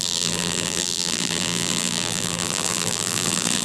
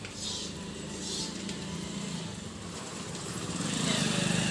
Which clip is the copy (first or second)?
first